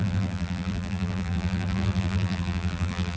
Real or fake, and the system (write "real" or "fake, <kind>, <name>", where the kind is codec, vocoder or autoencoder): fake, vocoder, BigVGAN v2